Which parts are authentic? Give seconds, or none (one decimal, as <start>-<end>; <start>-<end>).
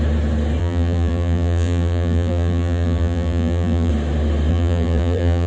0.0-0.6; 3.9-4.5